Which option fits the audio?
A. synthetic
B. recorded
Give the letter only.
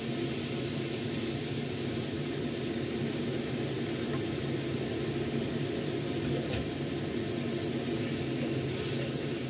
B